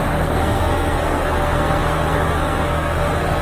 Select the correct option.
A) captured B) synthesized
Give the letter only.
B